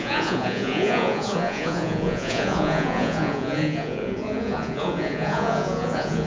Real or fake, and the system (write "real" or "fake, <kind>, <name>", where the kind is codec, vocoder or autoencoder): fake, vocoder, Vocos